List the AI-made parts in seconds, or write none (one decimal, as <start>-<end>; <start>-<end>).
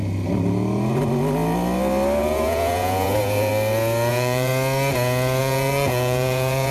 2.2-3.5; 4.1-4.5; 5.4-6.7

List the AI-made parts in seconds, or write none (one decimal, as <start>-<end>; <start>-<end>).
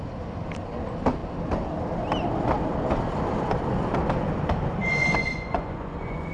4.8-6.3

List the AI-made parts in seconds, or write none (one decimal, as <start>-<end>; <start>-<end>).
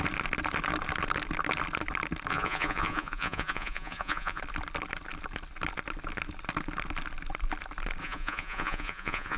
2.3-4.4; 8.0-9.4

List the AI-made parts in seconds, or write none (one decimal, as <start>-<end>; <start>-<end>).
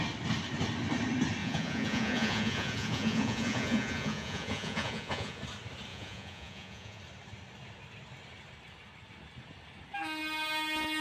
1.4-5.4; 5.9-7.0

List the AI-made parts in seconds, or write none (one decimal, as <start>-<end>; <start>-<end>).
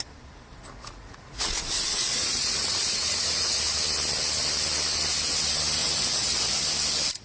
0.8-3.6; 5.8-6.6